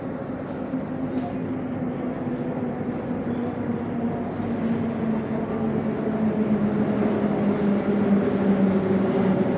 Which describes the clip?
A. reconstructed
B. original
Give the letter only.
B